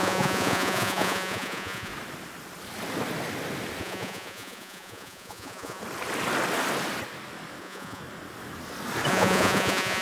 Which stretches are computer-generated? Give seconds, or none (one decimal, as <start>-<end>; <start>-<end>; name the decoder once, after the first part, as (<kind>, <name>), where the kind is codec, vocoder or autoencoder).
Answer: 0.0-1.9 (vocoder, Vocos); 3.8-5.8; 7.6-8.0; 9.1-10.0